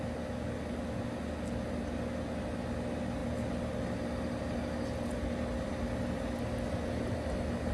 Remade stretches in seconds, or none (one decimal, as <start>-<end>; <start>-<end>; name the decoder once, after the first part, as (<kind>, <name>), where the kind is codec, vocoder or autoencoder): none